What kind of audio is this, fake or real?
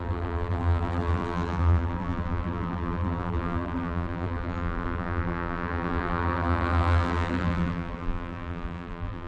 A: fake